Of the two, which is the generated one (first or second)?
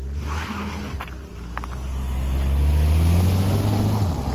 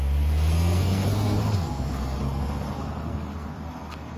second